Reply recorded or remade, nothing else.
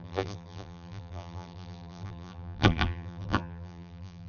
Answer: remade